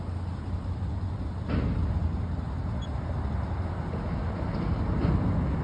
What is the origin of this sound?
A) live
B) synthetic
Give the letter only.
A